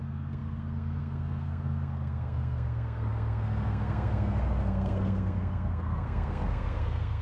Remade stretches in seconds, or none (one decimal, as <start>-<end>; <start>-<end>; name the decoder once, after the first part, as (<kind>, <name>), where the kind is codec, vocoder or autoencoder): 0.0-7.2 (codec, SNAC)